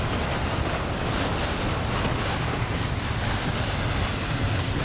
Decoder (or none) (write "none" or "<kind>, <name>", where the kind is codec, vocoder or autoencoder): none